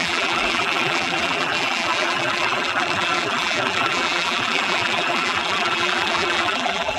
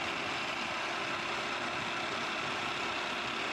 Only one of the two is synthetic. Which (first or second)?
first